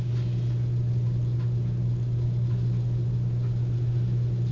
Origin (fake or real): real